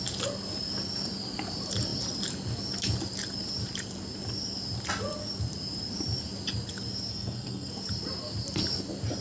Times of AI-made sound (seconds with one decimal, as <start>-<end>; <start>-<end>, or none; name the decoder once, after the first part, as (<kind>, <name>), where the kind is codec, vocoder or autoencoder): 7.1-7.7 (codec, SNAC)